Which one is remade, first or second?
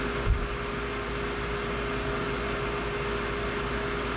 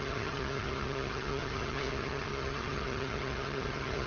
second